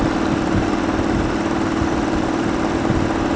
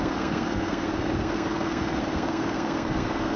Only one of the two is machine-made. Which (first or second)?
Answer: second